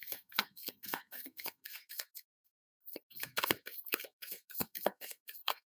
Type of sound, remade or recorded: remade